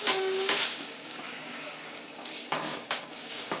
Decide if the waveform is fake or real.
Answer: fake